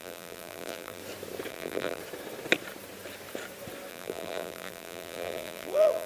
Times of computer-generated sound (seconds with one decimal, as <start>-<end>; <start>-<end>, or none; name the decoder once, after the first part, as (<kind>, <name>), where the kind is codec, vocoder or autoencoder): 0.0-1.0 (vocoder, BigVGAN v2); 1.5-2.0; 3.9-6.1